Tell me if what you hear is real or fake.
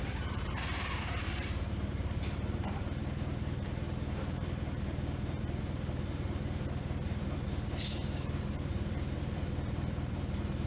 fake